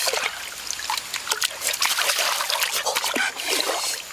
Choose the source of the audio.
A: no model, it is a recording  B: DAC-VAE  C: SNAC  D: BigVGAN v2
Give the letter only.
A